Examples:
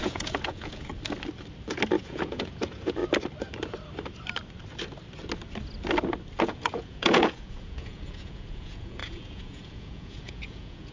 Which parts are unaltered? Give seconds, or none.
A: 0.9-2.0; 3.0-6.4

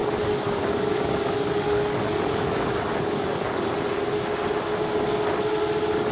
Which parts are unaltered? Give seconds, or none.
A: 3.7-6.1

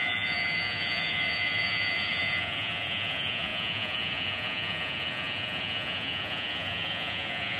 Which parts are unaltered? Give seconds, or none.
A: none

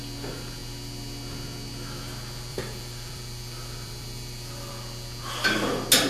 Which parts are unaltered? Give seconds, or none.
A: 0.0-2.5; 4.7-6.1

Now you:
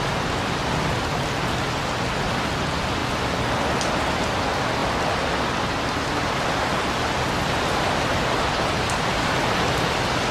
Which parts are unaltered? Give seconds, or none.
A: 0.0-10.3